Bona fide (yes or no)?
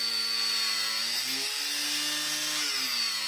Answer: yes